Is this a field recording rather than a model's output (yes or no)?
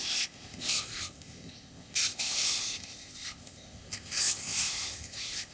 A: no